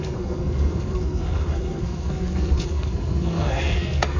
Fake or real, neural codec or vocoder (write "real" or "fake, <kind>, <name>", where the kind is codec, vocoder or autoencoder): fake, codec, SNAC